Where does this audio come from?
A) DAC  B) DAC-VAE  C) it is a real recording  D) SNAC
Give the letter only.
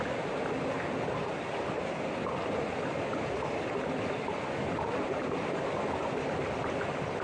C